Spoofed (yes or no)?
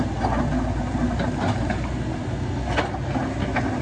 no